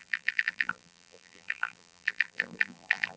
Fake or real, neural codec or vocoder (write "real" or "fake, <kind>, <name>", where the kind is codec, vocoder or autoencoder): fake, vocoder, BigVGAN v2